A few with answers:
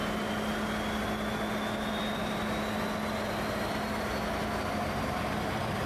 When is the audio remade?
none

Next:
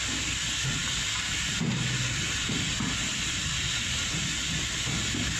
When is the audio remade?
none

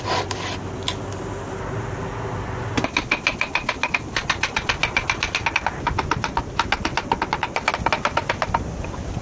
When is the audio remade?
none